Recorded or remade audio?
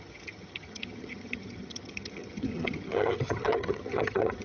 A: remade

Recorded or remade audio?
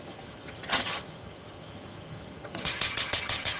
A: remade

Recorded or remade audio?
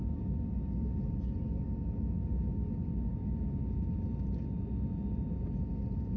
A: recorded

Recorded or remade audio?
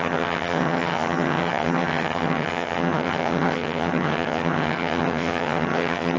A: remade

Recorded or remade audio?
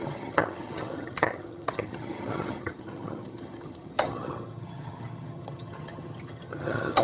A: remade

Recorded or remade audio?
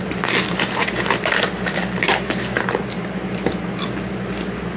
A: recorded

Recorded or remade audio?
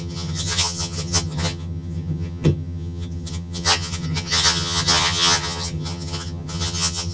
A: remade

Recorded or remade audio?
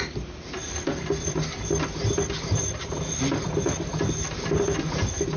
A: recorded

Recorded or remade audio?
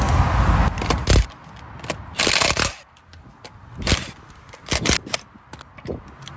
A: recorded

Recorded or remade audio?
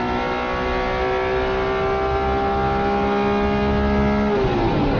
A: recorded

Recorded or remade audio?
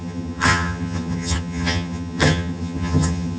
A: remade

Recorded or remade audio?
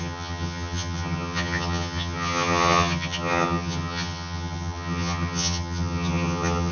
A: remade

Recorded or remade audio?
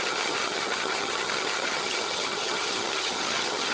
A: remade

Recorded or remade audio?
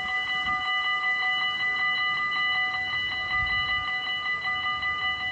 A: recorded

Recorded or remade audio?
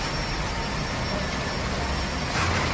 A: recorded